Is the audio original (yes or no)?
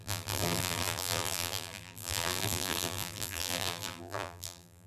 no